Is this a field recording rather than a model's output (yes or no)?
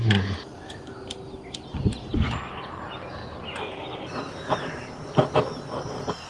yes